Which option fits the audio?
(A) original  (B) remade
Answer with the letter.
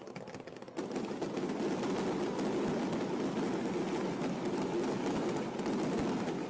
A